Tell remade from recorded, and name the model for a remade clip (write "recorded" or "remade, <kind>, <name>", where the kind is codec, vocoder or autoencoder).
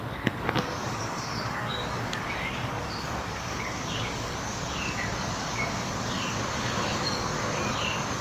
remade, codec, DAC